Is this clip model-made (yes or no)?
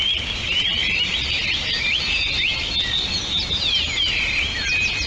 no